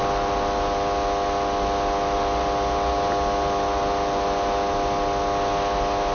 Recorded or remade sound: recorded